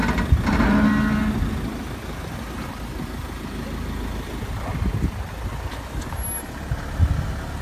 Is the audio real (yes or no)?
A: yes